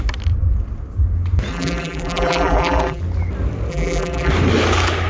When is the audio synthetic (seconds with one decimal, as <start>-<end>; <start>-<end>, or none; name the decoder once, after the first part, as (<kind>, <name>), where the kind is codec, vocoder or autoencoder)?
1.5-3.0 (vocoder, BigVGAN v2); 3.7-4.3